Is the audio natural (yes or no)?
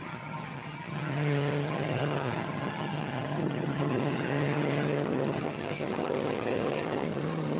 no